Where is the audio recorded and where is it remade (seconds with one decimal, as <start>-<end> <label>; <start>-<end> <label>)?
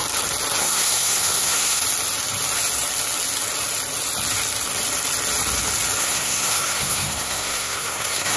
0.0-0.6 recorded; 0.6-1.8 remade; 1.8-6.0 recorded; 6.0-8.4 remade